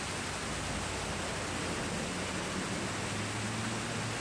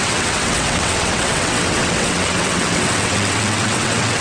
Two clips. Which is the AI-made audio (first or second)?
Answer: second